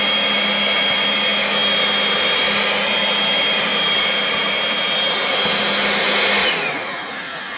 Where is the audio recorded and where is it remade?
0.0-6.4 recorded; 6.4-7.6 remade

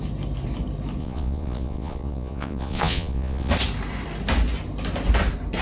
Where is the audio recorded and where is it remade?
0.0-1.0 recorded; 1.0-3.5 remade; 3.5-5.6 recorded

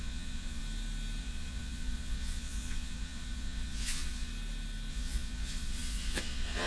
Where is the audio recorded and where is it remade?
0.0-0.6 remade; 0.6-1.2 recorded; 1.2-4.3 remade; 4.3-4.9 recorded; 4.9-6.7 remade

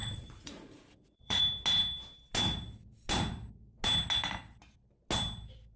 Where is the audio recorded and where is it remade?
0.0-1.4 remade; 1.4-5.8 recorded

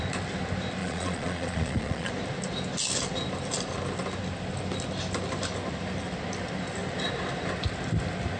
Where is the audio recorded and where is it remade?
0.0-0.8 recorded; 0.8-2.1 remade; 2.1-8.4 recorded

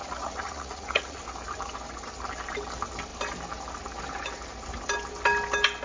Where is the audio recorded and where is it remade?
0.0-1.2 remade; 1.2-5.8 recorded

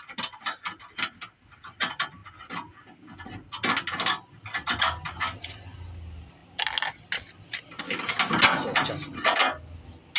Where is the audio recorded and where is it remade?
0.0-10.2 recorded

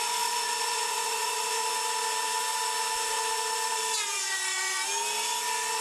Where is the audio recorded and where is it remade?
0.0-1.6 remade; 1.6-4.0 recorded; 4.0-4.8 remade; 4.8-5.8 recorded